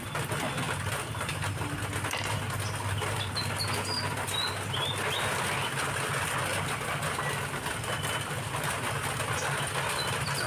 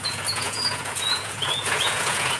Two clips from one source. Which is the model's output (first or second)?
second